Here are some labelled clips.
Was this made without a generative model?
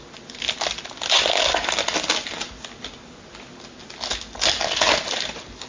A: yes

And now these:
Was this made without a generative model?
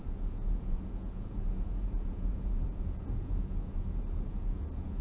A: no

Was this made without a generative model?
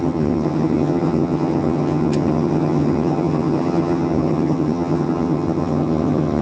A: no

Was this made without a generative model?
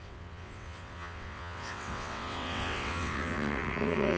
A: no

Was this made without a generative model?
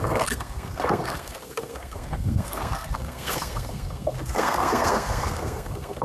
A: no